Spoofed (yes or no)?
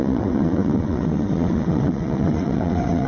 yes